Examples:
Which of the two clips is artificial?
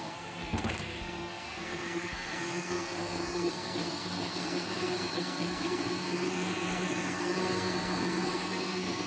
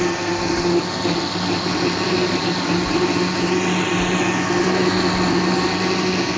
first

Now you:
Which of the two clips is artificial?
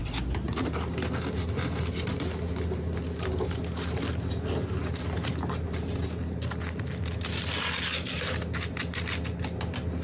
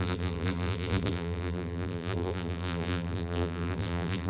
second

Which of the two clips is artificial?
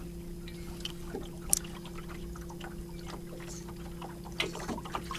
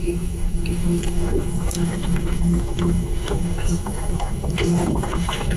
second